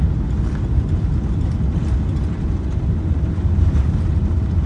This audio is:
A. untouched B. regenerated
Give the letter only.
A